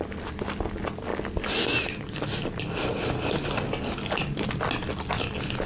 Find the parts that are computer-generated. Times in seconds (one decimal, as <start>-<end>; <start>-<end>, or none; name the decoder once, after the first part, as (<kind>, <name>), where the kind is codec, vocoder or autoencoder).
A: none